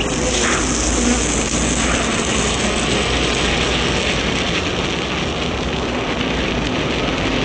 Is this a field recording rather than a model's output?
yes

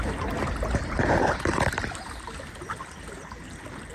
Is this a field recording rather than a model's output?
yes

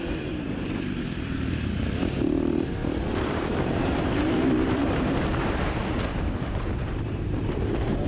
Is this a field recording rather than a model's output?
no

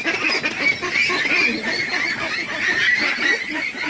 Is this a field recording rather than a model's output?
yes